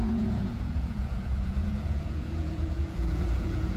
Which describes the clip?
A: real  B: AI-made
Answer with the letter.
B